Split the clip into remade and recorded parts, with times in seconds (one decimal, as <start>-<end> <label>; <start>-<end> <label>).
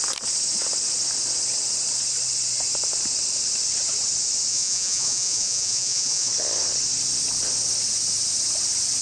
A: 0.0-4.5 recorded; 4.5-6.3 remade; 6.3-9.0 recorded